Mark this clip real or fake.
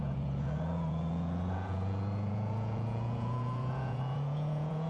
fake